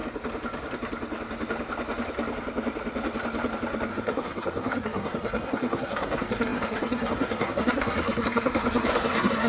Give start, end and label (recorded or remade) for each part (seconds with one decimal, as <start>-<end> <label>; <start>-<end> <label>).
0.0-3.9 recorded; 3.9-9.5 remade